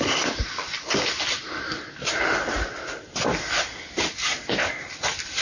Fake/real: real